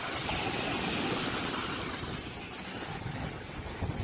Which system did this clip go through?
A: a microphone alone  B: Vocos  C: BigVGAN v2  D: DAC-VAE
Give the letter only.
A